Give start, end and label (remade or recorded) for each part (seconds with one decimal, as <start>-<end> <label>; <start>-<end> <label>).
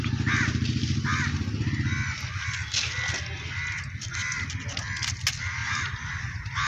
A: 0.0-6.7 recorded